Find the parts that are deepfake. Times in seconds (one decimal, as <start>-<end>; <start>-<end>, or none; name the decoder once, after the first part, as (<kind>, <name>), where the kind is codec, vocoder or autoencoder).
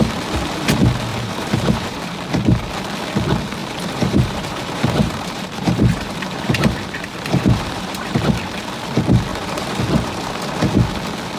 1.1-2.0 (vocoder, BigVGAN v2); 3.6-8.2; 9.3-9.8